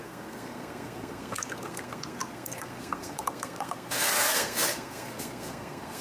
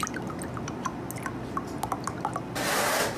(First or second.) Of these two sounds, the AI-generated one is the first